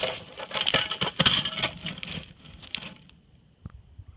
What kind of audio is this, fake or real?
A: real